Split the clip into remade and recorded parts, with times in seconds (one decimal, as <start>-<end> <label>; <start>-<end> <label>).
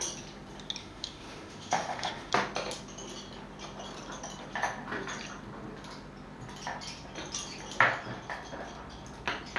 0.0-0.8 recorded; 0.8-2.3 remade; 2.3-9.6 recorded